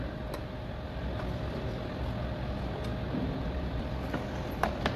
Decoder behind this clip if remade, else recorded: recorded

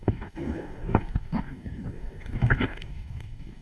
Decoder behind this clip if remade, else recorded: remade, codec, DAC